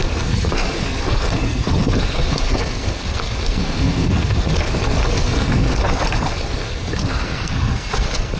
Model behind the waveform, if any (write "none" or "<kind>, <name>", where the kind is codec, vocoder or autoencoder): codec, SNAC